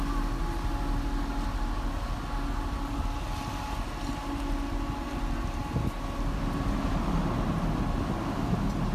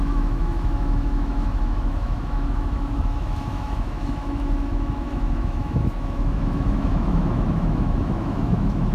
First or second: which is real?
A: first